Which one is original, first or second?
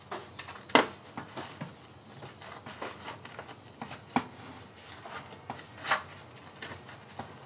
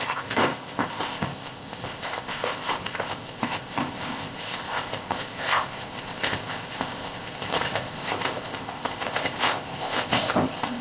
first